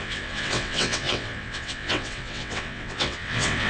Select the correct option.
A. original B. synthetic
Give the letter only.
B